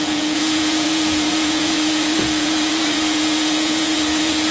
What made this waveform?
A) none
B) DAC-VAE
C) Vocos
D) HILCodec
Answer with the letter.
C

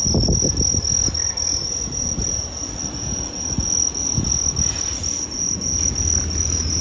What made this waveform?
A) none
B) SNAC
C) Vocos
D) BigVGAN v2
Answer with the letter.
A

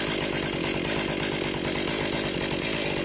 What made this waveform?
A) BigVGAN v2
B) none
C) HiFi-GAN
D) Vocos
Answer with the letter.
B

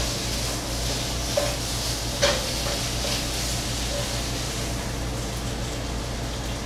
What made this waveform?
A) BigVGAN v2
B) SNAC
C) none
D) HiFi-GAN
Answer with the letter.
C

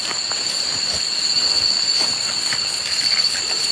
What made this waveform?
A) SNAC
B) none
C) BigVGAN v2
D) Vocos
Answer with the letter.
C